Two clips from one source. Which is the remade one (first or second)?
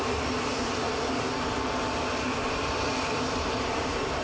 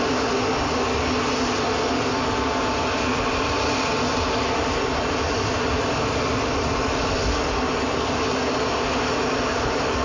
first